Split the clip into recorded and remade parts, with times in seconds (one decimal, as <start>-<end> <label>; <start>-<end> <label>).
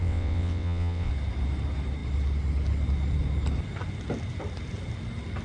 0.0-1.1 remade; 1.1-5.4 recorded